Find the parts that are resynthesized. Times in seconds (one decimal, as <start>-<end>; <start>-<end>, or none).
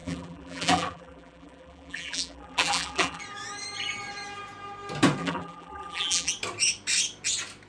0.0-3.2; 5.2-6.3